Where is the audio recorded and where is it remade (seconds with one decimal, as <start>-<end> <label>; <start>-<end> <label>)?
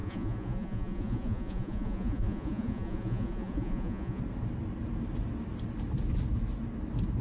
0.0-4.2 remade; 4.2-7.2 recorded